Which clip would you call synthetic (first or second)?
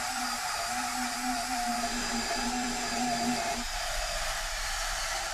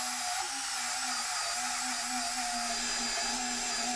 first